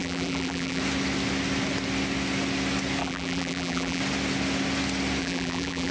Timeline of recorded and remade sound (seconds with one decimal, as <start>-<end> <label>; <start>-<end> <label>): 0.0-0.8 remade; 0.8-3.0 recorded; 3.0-4.0 remade; 4.0-5.2 recorded; 5.2-5.9 remade